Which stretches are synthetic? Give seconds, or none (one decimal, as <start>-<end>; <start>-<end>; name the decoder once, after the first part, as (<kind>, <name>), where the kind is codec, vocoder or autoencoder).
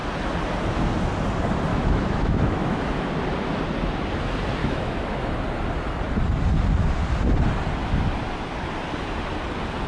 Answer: 1.7-3.1 (autoencoder, DAC-VAE); 4.6-5.3